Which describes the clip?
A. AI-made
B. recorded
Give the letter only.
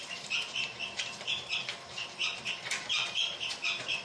A